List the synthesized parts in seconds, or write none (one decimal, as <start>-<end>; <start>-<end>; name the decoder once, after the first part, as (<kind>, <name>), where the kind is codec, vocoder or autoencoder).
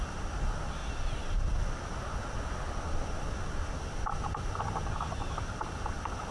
none